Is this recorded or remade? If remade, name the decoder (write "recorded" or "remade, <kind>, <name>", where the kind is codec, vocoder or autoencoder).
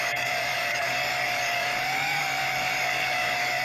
remade, codec, DAC